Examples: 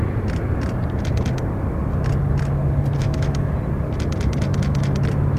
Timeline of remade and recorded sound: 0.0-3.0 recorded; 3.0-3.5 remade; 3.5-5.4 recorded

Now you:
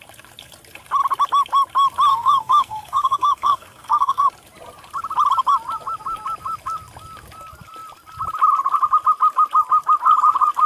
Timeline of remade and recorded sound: 0.0-2.1 recorded; 2.1-4.3 remade; 4.3-10.7 recorded